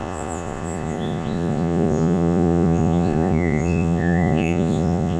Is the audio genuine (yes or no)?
no